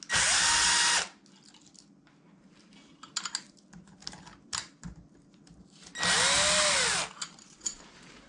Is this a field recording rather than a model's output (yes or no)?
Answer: yes